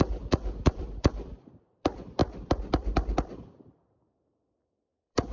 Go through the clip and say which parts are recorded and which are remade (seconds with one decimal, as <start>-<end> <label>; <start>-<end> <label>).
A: 0.0-2.2 remade; 2.2-2.7 recorded; 2.7-5.3 remade